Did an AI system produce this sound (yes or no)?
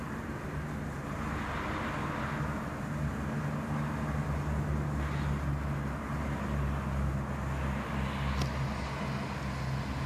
no